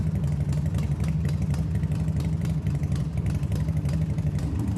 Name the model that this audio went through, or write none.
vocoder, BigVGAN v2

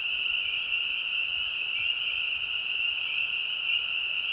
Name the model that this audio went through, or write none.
none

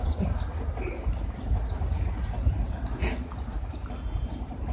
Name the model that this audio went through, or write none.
none